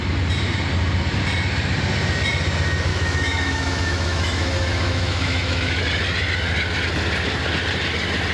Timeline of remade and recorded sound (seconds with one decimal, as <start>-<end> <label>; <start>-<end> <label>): 0.0-2.9 recorded; 2.9-5.8 remade; 5.8-8.3 recorded